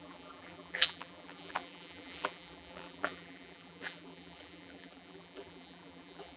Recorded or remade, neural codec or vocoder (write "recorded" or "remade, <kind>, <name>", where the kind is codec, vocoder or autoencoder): remade, vocoder, BigVGAN v2